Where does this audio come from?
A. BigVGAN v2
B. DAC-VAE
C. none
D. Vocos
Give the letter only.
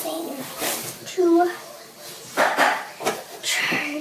A